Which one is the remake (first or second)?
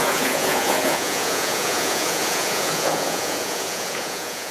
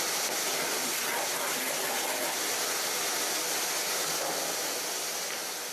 first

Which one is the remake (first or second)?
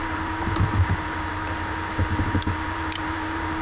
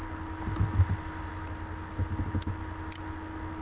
first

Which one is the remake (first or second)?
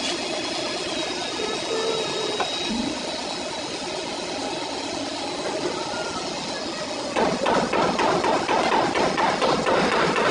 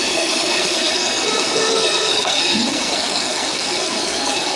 second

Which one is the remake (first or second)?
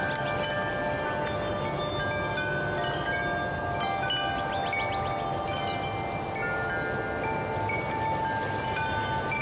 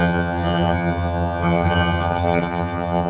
second